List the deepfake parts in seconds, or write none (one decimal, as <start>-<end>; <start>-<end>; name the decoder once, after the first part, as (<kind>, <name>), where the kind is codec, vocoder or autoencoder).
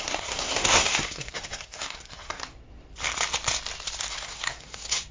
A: 0.0-2.4 (codec, SNAC); 4.1-5.1